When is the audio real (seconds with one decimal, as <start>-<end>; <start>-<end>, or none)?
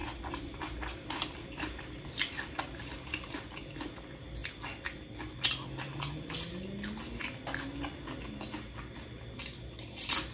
0.0-10.3